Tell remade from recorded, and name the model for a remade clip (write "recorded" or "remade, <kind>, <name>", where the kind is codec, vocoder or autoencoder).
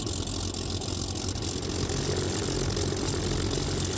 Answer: recorded